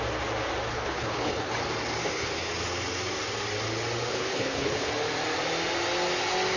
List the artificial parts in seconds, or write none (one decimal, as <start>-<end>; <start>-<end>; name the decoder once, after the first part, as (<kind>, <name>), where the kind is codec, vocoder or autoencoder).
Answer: 0.7-1.6 (codec, HILCodec); 2.0-2.5; 4.1-4.9